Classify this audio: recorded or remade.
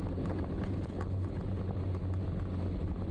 recorded